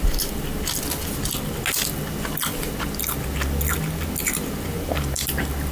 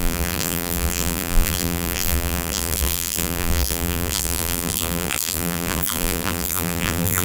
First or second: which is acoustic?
first